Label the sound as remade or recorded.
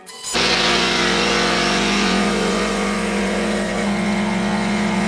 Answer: remade